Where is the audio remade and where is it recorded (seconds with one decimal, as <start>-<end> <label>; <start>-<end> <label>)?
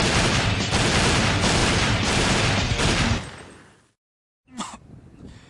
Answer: 0.0-1.6 recorded; 1.6-2.8 remade; 2.8-4.4 recorded; 4.4-4.9 remade; 4.9-5.5 recorded